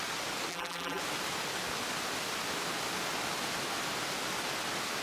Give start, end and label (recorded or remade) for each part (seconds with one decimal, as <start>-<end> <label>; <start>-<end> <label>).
0.0-0.5 recorded; 0.5-1.0 remade; 1.0-5.0 recorded